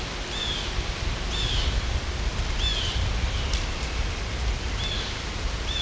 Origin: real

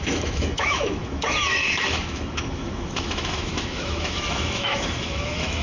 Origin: fake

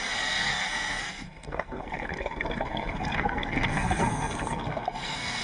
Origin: fake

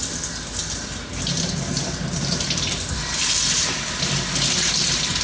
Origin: real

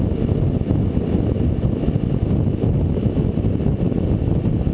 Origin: real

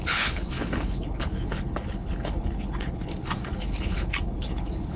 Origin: fake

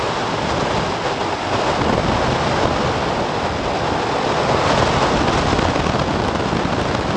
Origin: real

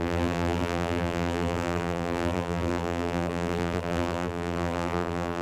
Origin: fake